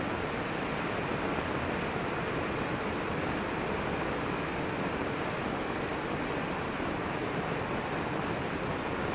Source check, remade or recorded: recorded